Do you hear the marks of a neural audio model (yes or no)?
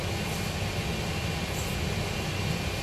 no